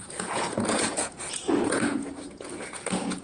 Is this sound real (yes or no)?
no